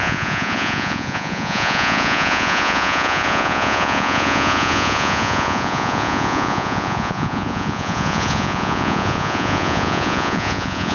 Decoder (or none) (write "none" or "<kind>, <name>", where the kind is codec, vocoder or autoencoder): vocoder, Vocos